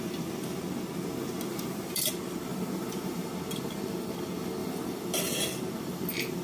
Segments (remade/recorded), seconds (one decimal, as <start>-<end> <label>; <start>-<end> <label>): 0.0-1.5 recorded; 1.5-2.1 remade; 2.1-2.5 recorded; 2.5-3.3 remade; 3.3-4.6 recorded; 4.6-5.2 remade; 5.2-6.4 recorded